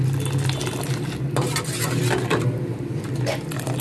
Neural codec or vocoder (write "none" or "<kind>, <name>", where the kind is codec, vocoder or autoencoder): none